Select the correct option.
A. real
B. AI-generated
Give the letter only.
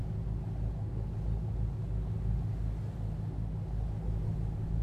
A